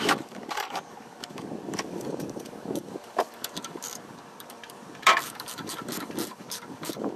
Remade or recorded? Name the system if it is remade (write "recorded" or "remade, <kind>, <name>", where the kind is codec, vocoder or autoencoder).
remade, codec, DAC